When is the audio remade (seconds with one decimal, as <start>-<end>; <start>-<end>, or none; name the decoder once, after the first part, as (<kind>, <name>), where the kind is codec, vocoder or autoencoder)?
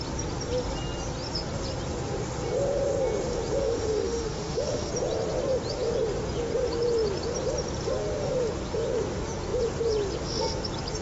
3.6-4.9 (autoencoder, DAC-VAE)